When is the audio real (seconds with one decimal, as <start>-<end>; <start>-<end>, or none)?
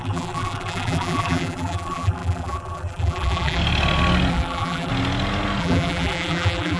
3.6-4.3; 4.9-5.6